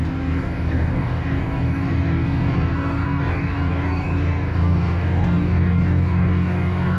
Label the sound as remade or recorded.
remade